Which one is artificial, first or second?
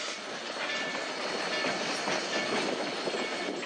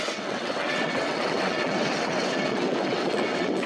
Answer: second